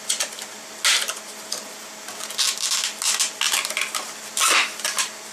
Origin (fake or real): real